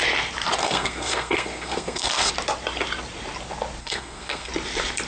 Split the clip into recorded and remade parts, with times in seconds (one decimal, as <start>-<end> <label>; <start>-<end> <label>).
0.0-0.6 recorded; 0.6-2.3 remade; 2.3-3.8 recorded; 3.8-4.5 remade; 4.5-5.1 recorded